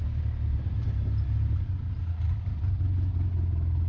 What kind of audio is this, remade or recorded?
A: recorded